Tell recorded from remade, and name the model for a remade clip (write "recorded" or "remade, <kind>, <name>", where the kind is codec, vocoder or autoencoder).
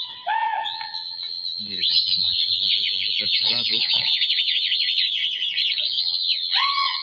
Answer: remade, vocoder, WaveNeXt